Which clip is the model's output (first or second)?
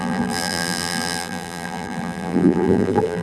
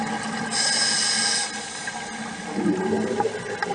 first